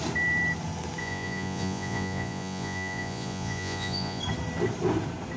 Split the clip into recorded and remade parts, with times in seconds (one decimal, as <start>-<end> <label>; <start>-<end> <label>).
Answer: 0.0-1.0 recorded; 1.0-4.2 remade; 4.2-5.4 recorded